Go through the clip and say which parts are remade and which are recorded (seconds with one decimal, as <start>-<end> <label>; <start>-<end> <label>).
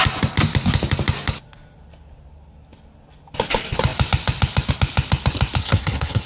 0.0-5.6 recorded; 5.6-6.3 remade